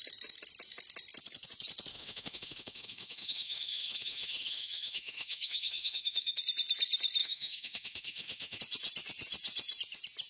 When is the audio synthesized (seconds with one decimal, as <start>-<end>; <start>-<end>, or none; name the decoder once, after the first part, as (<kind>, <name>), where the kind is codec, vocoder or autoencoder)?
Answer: 1.9-6.4 (autoencoder, DAC-VAE); 7.2-8.6